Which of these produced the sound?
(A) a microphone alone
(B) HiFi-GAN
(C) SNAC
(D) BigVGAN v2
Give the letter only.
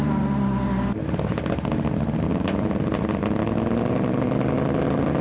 A